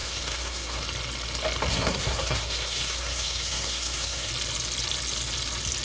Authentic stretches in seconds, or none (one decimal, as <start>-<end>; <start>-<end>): 0.8-1.7; 4.3-5.8